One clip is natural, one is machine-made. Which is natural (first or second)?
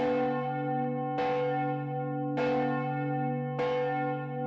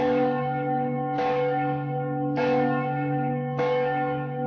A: first